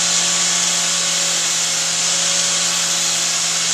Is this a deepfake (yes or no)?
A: no